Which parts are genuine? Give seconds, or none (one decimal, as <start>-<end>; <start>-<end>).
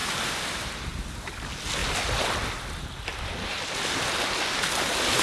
0.0-5.2